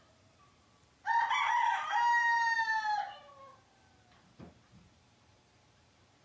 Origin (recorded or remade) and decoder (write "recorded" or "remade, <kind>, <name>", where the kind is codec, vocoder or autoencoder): remade, vocoder, BigVGAN v2